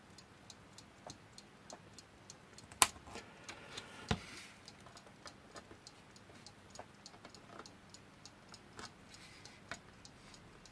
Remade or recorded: recorded